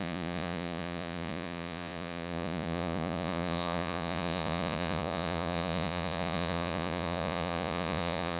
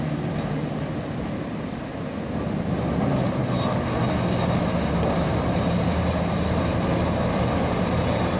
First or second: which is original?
second